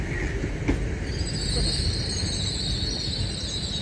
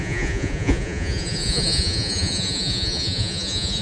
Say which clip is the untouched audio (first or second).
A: first